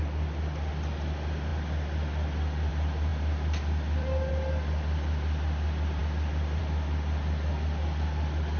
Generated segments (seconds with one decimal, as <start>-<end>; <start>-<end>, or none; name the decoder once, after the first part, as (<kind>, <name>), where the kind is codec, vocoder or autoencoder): none